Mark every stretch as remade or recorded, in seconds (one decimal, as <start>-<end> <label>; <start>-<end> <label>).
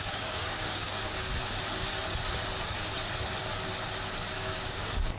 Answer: 0.0-1.3 remade; 1.3-4.4 recorded; 4.4-5.2 remade